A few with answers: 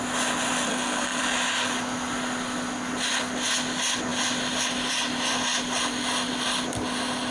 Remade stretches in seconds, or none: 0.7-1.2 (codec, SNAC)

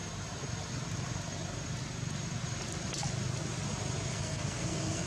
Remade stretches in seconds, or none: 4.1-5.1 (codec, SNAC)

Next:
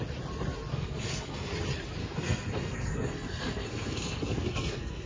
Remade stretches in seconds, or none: 0.7-1.5 (codec, SNAC); 2.0-5.1

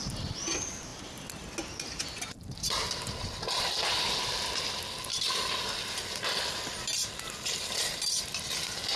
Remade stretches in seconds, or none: none